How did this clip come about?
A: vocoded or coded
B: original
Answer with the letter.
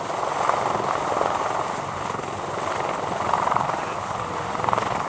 B